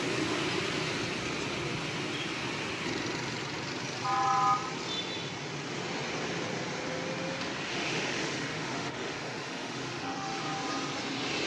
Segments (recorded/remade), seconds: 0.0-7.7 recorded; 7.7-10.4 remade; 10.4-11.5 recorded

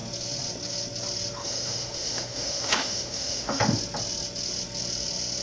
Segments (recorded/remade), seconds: 0.0-1.4 recorded; 1.4-3.6 remade; 3.6-5.4 recorded